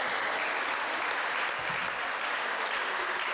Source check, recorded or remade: recorded